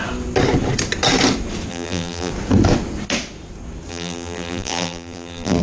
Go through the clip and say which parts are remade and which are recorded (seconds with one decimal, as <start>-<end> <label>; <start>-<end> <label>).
0.0-1.7 recorded; 1.7-2.3 remade; 2.3-3.9 recorded; 3.9-5.6 remade

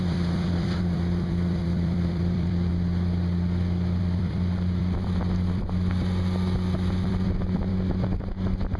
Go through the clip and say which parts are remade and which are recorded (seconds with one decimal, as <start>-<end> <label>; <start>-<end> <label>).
0.0-2.7 remade; 2.7-4.0 recorded; 4.0-7.7 remade; 7.7-8.8 recorded